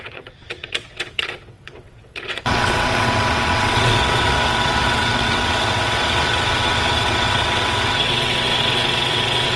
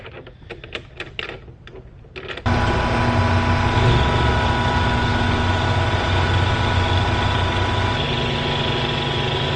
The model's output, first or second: first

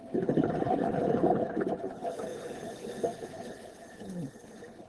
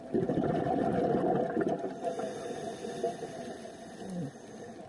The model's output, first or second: first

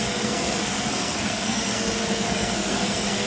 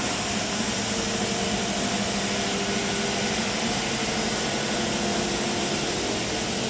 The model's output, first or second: first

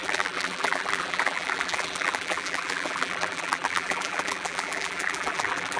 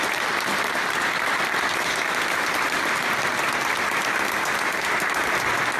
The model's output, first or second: first